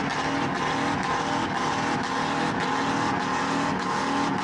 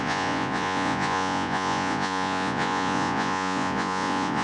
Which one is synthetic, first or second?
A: second